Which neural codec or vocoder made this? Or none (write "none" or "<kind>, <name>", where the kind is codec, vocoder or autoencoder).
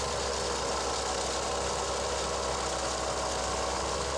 none